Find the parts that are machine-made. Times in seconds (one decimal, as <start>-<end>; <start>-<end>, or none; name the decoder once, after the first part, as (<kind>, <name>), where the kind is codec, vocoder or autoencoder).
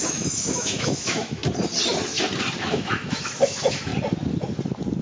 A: 0.0-1.4 (autoencoder, DAC-VAE); 2.6-3.9